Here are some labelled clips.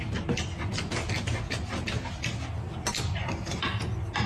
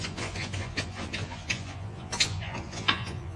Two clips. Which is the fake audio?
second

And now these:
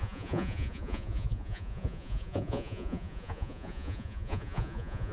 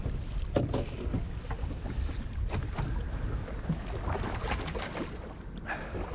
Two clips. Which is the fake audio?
first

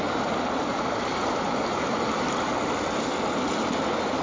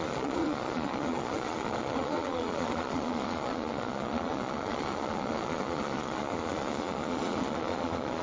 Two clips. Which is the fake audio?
second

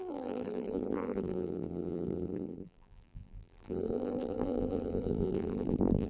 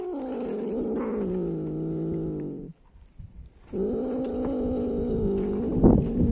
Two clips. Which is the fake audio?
first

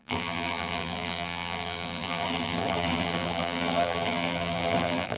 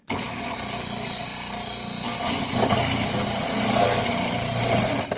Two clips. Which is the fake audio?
first